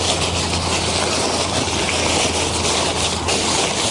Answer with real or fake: real